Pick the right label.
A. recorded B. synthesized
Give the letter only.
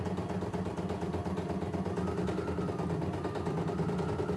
A